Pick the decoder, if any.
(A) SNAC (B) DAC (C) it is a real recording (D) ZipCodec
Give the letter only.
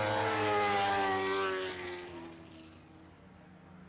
C